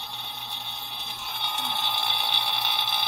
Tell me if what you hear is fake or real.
fake